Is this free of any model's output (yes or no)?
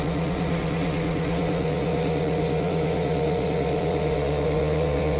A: no